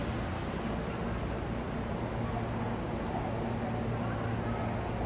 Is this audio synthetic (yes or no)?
no